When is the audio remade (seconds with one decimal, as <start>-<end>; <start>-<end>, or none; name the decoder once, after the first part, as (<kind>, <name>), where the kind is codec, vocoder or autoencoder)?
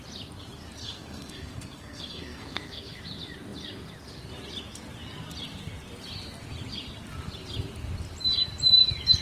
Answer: 0.8-3.0 (codec, SNAC)